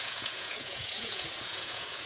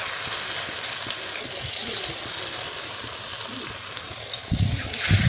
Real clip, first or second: second